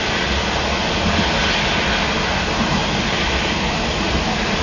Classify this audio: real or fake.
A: real